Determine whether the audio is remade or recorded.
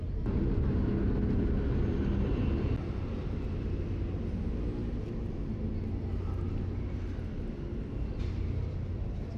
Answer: recorded